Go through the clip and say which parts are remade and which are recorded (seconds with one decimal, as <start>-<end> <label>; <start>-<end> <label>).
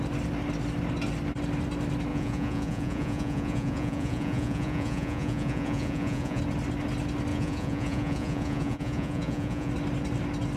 0.0-2.1 recorded; 2.1-6.4 remade; 6.4-7.3 recorded; 7.3-9.7 remade; 9.7-10.6 recorded